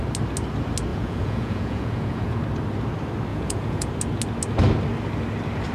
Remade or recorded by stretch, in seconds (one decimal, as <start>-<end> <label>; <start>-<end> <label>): 0.0-0.9 recorded; 0.9-2.4 remade; 2.4-3.3 recorded; 3.3-3.9 remade; 3.9-5.7 recorded